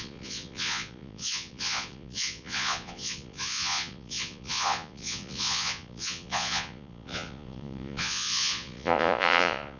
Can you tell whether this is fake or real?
fake